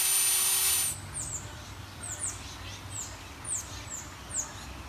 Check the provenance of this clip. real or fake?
real